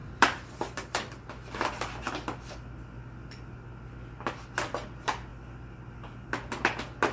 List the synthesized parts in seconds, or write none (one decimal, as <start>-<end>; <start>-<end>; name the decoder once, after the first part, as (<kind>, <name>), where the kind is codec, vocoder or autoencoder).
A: 0.0-2.5 (vocoder, BigVGAN v2)

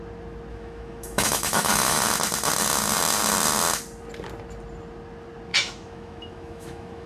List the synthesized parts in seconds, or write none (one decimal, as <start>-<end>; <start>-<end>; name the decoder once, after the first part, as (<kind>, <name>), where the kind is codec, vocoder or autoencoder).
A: 0.5-2.0 (autoencoder, DAC-VAE); 5.5-7.1

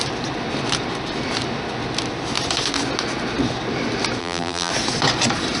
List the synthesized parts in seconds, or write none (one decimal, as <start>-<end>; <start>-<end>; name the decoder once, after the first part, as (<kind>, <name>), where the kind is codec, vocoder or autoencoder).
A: 4.2-4.7 (vocoder, BigVGAN v2)

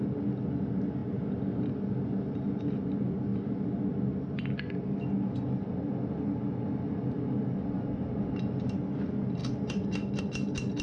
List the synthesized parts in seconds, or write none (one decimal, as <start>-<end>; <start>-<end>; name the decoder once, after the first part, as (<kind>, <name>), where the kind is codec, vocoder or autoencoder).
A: none

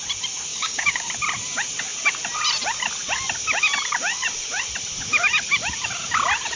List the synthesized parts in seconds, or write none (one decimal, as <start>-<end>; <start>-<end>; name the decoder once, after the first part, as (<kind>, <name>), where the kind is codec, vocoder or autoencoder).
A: 0.5-1.1 (codec, DAC)

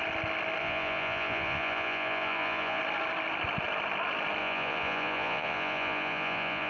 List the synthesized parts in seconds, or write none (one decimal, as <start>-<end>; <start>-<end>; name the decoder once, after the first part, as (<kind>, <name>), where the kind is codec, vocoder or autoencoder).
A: 0.6-2.8 (vocoder, Vocos); 4.4-6.7